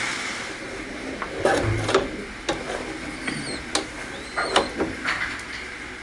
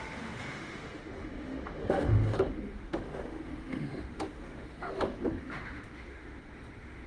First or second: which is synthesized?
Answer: second